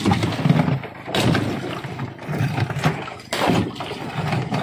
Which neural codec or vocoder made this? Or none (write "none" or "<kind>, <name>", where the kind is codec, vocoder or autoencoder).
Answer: vocoder, BigVGAN v2